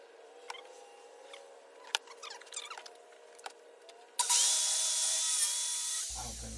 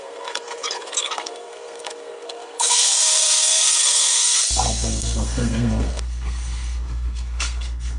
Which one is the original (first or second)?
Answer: first